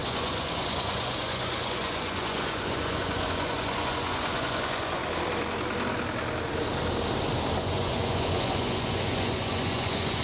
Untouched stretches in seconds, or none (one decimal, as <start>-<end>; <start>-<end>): 5.0-7.6

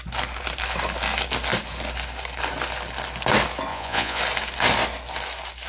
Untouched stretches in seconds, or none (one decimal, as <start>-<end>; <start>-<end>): 0.0-3.7; 4.2-5.7

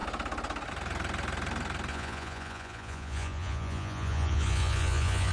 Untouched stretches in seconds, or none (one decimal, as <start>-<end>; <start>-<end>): 0.0-1.9

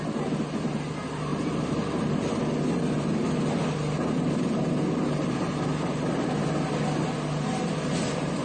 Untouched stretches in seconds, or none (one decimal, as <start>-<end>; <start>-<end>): 0.0-8.4

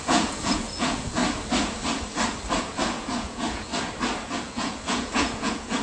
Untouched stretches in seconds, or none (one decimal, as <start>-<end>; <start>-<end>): 1.2-2.6; 3.7-4.4

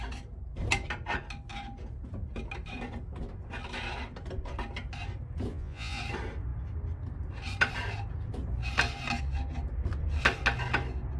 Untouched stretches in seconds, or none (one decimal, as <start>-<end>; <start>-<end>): 0.0-5.5; 6.0-11.2

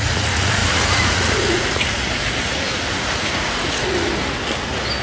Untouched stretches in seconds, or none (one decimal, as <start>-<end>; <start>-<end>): 4.1-5.0

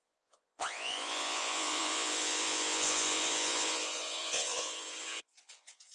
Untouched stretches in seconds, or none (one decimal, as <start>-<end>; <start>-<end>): none